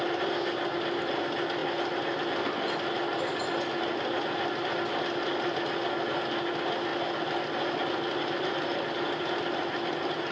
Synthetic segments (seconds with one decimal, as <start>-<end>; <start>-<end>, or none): none